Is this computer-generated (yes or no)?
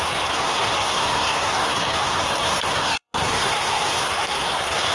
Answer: yes